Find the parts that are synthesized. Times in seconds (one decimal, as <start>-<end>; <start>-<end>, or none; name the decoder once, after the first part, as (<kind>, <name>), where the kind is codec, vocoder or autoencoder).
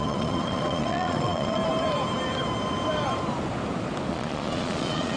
0.0-1.6 (vocoder, Vocos); 4.1-5.2